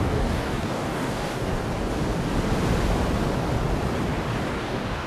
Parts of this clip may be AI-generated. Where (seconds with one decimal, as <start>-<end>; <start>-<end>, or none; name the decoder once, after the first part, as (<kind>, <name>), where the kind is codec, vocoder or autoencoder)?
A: 0.0-1.5 (codec, DAC); 4.5-5.1